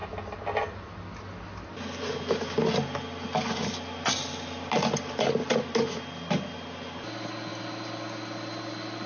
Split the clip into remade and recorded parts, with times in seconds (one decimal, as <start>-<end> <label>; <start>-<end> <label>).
0.0-9.1 recorded

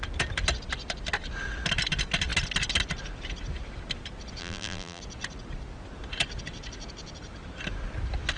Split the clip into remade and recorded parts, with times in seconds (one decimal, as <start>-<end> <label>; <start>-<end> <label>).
0.0-4.4 recorded; 4.4-5.0 remade; 5.0-8.4 recorded

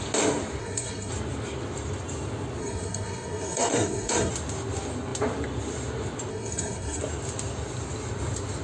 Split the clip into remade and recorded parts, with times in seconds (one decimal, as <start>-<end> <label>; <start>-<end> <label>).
0.0-0.6 recorded; 0.6-1.1 remade; 1.1-2.6 recorded; 2.6-4.3 remade; 4.3-6.3 recorded; 6.3-7.0 remade; 7.0-8.6 recorded

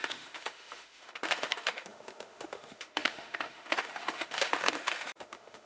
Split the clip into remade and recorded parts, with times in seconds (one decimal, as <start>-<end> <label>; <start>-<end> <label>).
0.0-5.7 remade

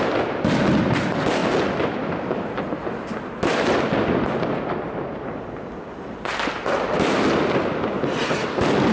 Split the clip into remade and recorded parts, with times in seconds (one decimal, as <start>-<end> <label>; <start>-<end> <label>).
0.0-8.9 recorded

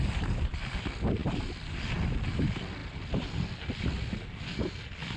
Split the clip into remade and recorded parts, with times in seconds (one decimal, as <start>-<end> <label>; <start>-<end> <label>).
0.0-5.2 recorded

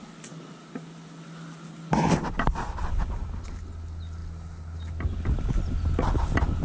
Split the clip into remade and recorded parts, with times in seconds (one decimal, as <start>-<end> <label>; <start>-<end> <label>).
0.0-6.6 recorded

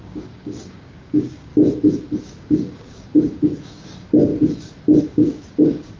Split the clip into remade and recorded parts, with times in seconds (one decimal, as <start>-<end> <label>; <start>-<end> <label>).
0.0-1.5 remade; 1.5-2.2 recorded; 2.2-4.3 remade; 4.3-5.0 recorded; 5.0-6.0 remade